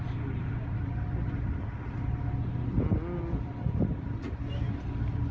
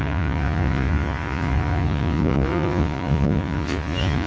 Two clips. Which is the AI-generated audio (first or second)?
second